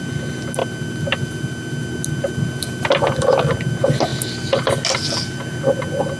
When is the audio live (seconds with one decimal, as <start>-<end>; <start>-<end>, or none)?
0.0-6.2